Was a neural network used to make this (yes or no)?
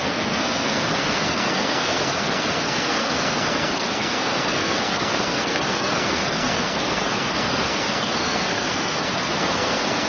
yes